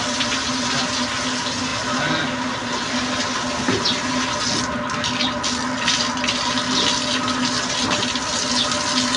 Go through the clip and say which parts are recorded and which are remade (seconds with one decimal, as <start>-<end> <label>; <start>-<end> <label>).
0.0-9.2 recorded